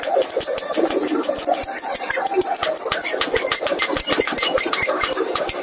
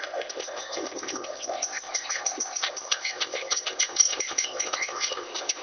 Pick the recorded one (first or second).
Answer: first